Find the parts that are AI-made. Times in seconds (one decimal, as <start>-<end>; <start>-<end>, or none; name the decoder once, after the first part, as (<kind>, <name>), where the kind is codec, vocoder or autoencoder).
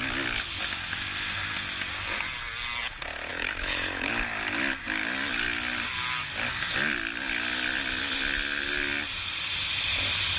3.3-4.1 (autoencoder, DAC-VAE)